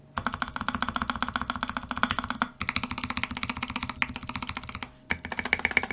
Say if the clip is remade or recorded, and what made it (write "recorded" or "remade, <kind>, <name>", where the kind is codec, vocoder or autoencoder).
recorded